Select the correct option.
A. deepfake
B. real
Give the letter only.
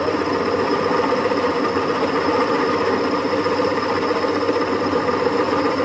A